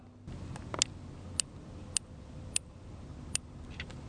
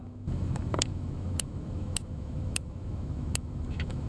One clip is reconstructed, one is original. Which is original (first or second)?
first